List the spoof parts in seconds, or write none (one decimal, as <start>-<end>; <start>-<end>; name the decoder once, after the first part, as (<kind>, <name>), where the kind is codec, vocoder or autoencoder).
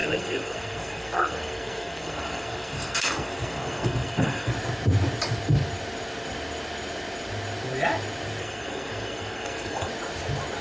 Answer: 0.0-4.5 (codec, SNAC); 8.4-9.9